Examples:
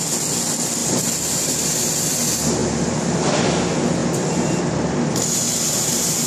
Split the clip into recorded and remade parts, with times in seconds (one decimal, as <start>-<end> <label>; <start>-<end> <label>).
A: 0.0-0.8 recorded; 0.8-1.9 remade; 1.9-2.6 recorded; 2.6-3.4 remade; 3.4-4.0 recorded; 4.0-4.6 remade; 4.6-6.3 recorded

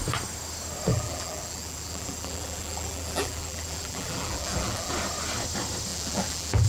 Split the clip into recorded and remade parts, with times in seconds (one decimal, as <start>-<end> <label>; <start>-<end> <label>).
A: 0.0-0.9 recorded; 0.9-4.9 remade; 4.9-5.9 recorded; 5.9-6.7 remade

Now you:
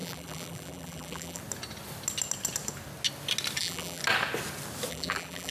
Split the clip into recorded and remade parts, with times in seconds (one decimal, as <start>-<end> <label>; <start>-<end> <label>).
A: 0.0-1.4 remade; 1.4-3.6 recorded; 3.6-4.0 remade; 4.0-4.9 recorded; 4.9-5.5 remade

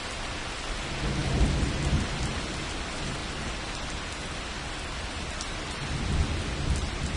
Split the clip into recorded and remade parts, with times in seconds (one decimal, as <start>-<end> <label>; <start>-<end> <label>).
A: 0.0-7.2 recorded

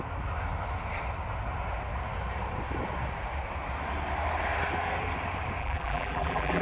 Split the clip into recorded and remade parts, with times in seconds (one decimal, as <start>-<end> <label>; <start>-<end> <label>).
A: 0.0-5.6 recorded; 5.6-6.6 remade

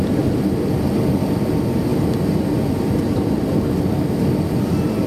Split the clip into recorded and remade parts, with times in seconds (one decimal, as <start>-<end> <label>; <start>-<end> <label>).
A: 0.0-1.9 recorded; 1.9-3.0 remade; 3.0-5.1 recorded

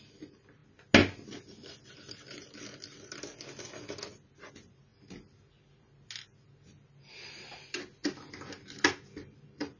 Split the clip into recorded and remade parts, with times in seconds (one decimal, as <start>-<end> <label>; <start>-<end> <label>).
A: 0.0-0.6 remade; 0.6-4.5 recorded; 4.5-4.9 remade; 4.9-9.3 recorded; 9.3-9.8 remade